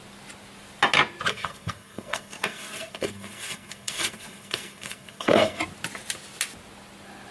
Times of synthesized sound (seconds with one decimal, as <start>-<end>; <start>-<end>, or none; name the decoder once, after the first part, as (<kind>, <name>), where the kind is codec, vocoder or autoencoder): 1.3-5.6 (codec, SNAC)